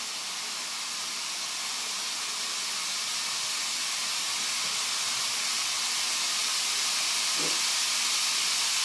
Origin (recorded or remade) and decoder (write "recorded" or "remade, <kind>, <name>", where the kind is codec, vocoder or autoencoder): recorded